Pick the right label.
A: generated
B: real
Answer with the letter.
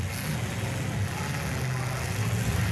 B